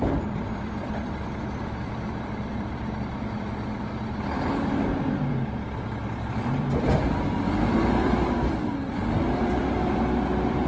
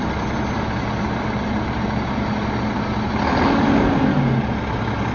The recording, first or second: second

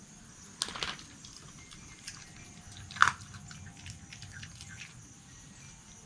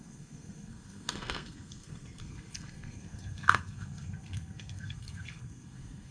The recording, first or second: first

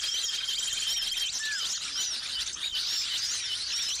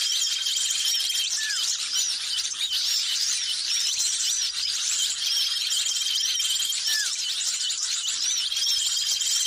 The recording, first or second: first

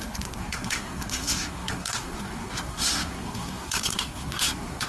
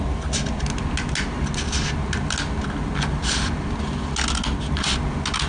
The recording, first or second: second